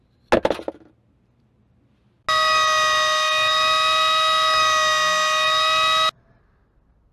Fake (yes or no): no